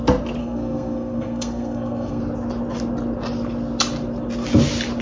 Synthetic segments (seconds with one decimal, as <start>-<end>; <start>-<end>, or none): 0.4-2.2